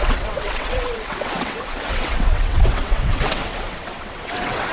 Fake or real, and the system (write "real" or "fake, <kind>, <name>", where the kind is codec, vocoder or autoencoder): fake, vocoder, WaveNeXt